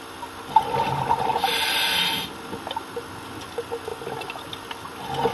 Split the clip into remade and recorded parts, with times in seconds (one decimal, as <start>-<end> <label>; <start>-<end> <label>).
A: 0.0-3.9 recorded; 3.9-4.5 remade; 4.5-5.3 recorded